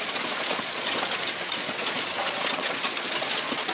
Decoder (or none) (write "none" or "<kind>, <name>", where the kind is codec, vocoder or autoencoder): vocoder, Vocos